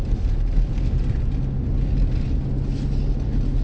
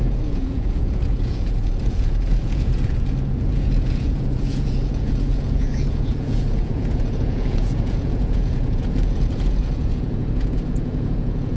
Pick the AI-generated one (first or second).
second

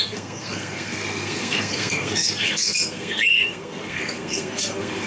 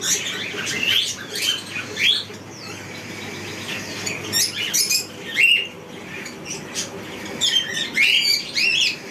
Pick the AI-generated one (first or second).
first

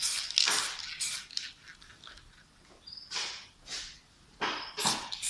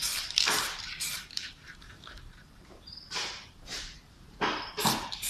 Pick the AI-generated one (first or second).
second